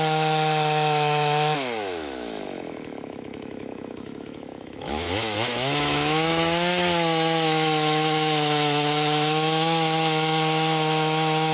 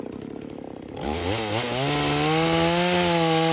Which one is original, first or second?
second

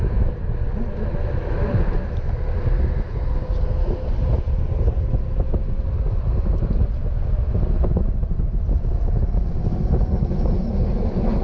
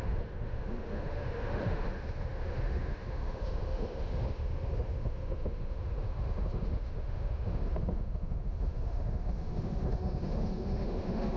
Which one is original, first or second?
first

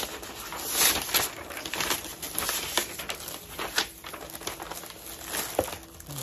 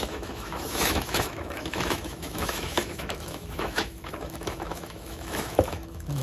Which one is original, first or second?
first